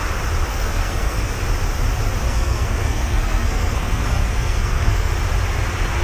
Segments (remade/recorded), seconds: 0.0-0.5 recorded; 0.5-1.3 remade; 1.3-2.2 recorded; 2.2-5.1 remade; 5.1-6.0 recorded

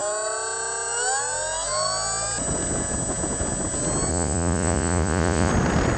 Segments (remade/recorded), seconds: 0.0-4.1 recorded; 4.1-5.5 remade; 5.5-6.0 recorded

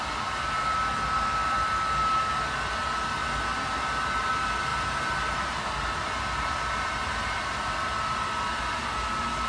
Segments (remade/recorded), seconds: 0.0-4.7 recorded; 4.7-7.7 remade; 7.7-9.5 recorded

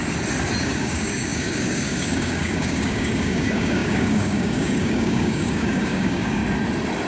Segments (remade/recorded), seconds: 0.0-0.6 recorded; 0.6-6.4 remade; 6.4-7.1 recorded

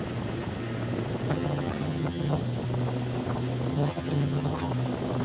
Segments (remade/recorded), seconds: 0.0-1.3 recorded; 1.3-2.4 remade; 2.4-3.7 recorded; 3.7-4.7 remade; 4.7-5.2 recorded

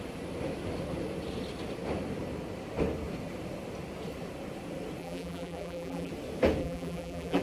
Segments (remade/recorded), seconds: 0.0-5.0 recorded; 5.0-6.1 remade; 6.1-6.6 recorded; 6.6-7.4 remade